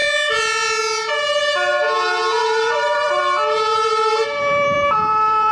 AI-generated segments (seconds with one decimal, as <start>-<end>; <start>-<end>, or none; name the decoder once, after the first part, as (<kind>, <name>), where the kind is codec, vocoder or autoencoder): 2.4-3.2 (vocoder, BigVGAN v2); 3.7-5.5